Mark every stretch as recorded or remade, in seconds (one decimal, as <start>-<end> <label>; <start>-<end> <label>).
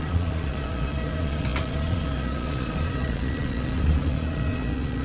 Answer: 0.0-5.0 remade